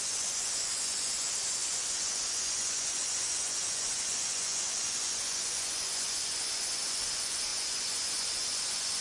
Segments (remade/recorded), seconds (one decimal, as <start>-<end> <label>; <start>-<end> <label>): 0.0-9.0 remade